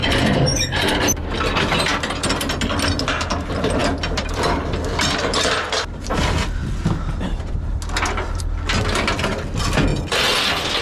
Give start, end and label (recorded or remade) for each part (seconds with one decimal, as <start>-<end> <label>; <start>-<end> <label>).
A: 0.0-1.0 remade; 1.0-3.8 recorded; 3.8-5.5 remade; 5.5-10.8 recorded